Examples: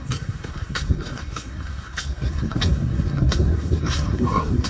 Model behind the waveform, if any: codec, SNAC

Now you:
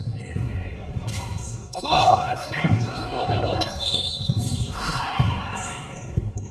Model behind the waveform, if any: codec, SNAC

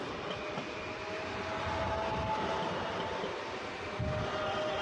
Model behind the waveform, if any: none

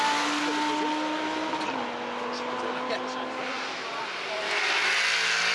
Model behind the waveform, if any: none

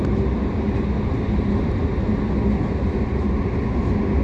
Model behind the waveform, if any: none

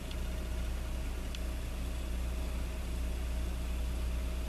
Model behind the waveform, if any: none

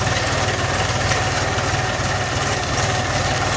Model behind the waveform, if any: none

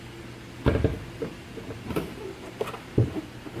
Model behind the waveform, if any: none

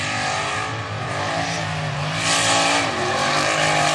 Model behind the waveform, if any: none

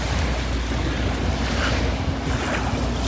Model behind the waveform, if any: none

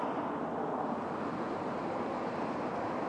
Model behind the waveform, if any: none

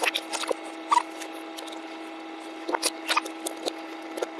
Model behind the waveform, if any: none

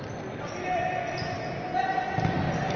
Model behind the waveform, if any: none